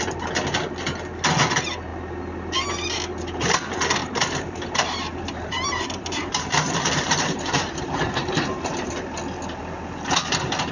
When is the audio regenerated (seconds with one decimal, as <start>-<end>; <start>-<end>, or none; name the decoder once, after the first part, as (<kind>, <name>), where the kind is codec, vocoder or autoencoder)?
4.0-8.9 (vocoder, BigVGAN v2)